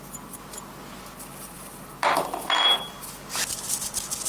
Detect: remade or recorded recorded